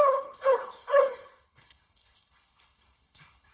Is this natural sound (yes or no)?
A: no